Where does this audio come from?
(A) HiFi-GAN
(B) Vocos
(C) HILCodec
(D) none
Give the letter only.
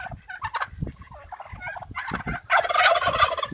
D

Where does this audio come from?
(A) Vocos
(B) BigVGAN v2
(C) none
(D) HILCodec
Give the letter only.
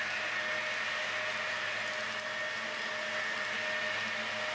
C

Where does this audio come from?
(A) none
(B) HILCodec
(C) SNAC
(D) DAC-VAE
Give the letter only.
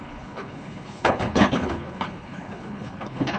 B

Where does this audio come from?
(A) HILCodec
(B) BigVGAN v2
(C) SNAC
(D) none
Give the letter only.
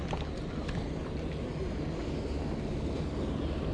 D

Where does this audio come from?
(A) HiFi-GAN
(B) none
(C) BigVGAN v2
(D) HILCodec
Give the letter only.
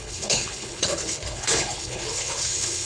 D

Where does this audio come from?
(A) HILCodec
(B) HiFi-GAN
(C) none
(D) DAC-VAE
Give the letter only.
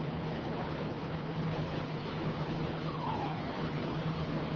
A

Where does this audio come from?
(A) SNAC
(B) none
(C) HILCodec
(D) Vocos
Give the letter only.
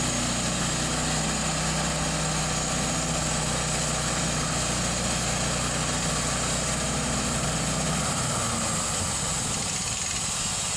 B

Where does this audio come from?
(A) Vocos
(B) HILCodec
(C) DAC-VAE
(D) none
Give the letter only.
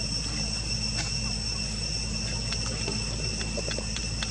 D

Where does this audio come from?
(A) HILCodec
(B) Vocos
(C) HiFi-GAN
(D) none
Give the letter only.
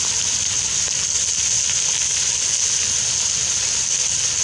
D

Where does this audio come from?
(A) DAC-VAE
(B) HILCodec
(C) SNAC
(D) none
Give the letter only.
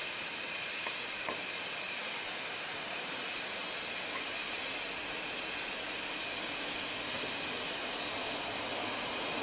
D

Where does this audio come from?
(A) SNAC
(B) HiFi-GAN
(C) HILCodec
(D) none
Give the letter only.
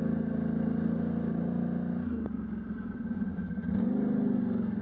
D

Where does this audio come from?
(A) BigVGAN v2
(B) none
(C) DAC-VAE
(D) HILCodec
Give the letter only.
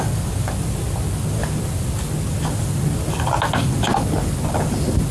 B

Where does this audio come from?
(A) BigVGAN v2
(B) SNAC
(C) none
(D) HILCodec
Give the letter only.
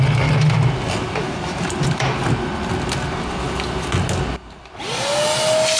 C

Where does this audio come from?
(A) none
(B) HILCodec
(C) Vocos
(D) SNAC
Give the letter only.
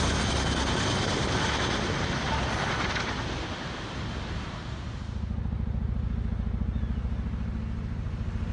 A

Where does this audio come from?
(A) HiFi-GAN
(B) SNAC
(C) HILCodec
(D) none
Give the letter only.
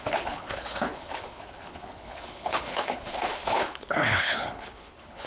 C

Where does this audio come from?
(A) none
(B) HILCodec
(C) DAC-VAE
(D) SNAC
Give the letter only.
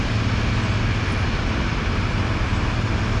A